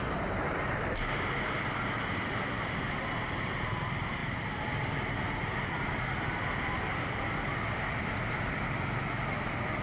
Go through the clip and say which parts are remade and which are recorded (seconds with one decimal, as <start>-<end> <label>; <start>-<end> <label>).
0.0-4.2 recorded; 4.2-6.9 remade; 6.9-9.8 recorded